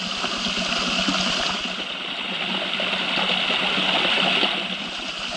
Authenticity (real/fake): real